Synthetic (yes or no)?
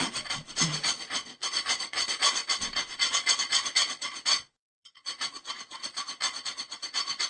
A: yes